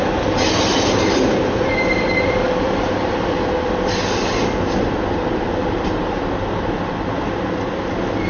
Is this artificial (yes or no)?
no